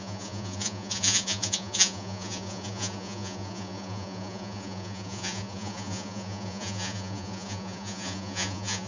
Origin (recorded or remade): remade